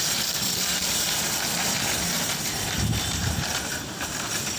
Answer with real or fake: fake